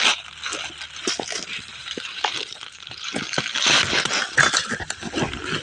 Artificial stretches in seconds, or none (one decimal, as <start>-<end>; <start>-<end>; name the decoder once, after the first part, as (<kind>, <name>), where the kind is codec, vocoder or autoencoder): 1.7-3.1 (vocoder, BigVGAN v2)